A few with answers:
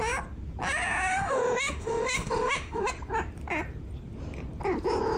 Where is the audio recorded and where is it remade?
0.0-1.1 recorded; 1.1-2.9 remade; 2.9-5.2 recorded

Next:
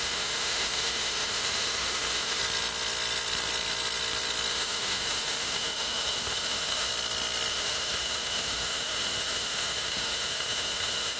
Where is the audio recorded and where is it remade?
0.0-2.4 remade; 2.4-4.5 recorded; 4.5-6.9 remade; 6.9-7.5 recorded; 7.5-11.2 remade

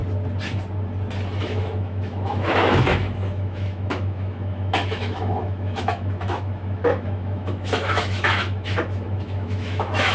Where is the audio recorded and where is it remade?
0.0-1.4 recorded; 1.4-10.1 remade

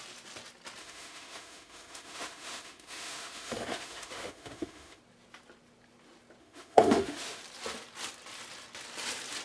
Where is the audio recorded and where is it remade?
0.0-0.8 recorded; 0.8-5.0 remade; 5.0-6.4 recorded; 6.4-7.4 remade; 7.4-9.4 recorded

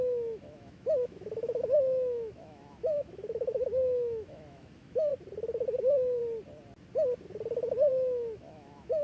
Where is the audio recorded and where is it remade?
0.0-5.1 remade; 5.1-5.8 recorded; 5.8-6.2 remade; 6.2-7.9 recorded; 7.9-9.0 remade

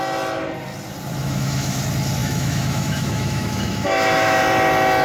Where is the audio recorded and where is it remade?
0.0-1.2 recorded; 1.2-1.8 remade; 1.8-2.2 recorded; 2.2-4.4 remade; 4.4-5.0 recorded

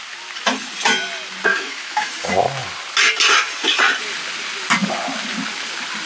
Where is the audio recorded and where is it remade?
0.0-1.5 recorded; 1.5-2.1 remade; 2.1-6.1 recorded

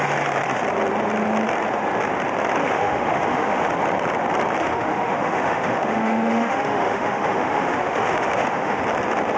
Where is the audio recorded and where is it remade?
0.0-2.6 recorded; 2.6-3.7 remade; 3.7-4.6 recorded; 4.6-8.8 remade; 8.8-9.4 recorded